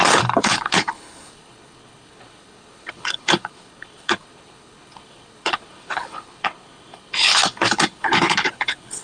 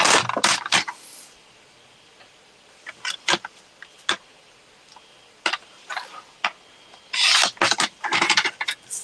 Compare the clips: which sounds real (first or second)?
second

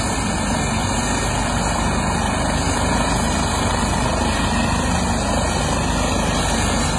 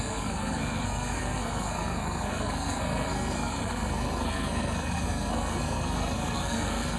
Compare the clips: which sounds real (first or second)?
first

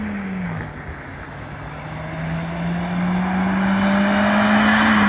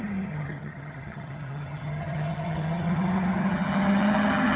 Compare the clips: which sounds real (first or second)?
first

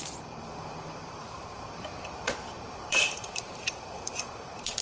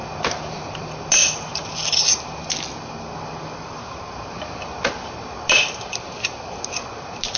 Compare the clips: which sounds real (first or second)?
second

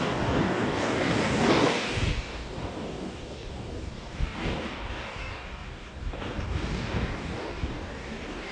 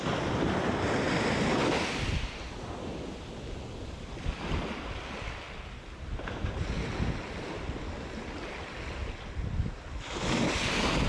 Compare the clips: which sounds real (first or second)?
second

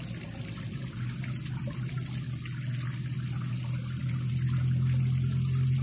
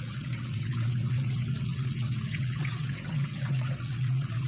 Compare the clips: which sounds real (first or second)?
first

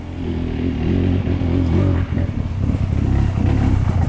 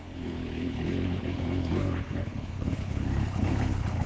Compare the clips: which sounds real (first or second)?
first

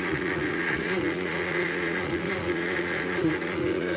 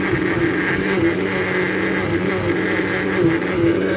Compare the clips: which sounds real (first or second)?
second